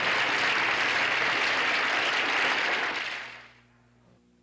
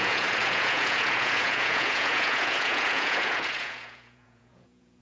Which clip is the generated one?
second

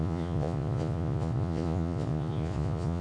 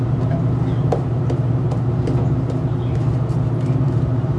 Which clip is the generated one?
first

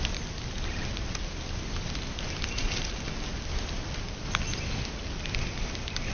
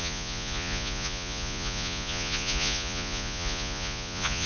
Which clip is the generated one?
second